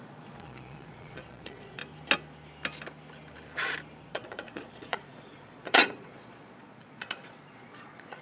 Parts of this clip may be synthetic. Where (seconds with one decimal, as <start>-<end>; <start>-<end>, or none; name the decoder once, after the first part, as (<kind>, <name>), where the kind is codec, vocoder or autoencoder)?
0.0-1.8 (vocoder, Vocos); 4.0-8.2